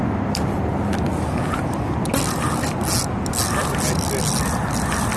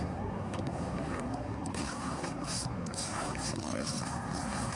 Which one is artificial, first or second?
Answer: second